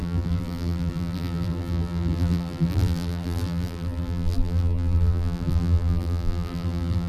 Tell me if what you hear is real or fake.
fake